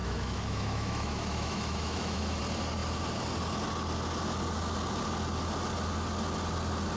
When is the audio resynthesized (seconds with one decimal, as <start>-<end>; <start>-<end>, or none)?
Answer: 0.0-2.4